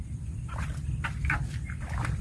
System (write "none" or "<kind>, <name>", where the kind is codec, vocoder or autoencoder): vocoder, BigVGAN v2